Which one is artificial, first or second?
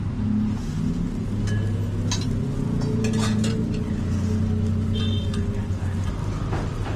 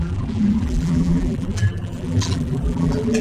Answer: second